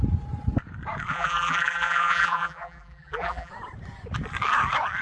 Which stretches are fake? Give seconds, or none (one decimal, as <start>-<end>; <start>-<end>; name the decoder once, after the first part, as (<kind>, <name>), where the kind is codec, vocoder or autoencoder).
1.1-3.5 (vocoder, BigVGAN v2)

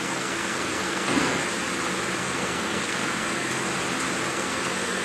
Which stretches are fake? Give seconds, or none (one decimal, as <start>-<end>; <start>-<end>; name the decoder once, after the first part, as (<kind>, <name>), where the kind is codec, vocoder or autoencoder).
0.0-1.4 (codec, SNAC); 2.2-3.7; 4.3-5.0